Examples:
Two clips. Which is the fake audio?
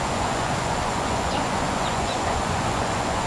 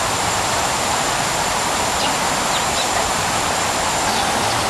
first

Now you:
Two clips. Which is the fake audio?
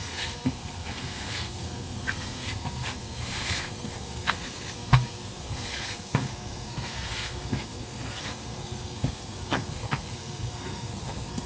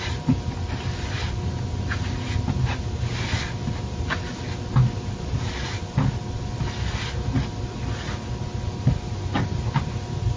first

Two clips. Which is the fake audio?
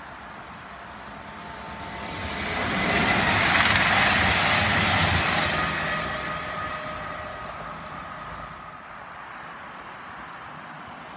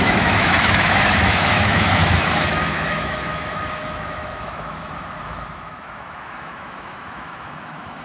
second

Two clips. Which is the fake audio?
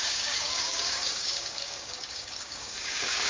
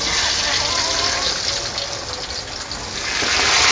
first